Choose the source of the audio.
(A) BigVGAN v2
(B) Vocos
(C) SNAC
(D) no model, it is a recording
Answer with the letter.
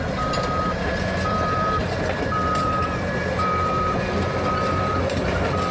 A